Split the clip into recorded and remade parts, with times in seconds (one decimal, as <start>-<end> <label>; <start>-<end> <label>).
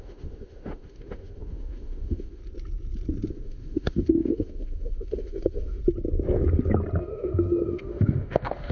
0.0-2.4 remade; 2.4-3.3 recorded; 3.3-5.8 remade; 5.8-7.0 recorded; 7.0-8.7 remade